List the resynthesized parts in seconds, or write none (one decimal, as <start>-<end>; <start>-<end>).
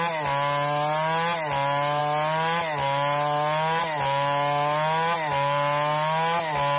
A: none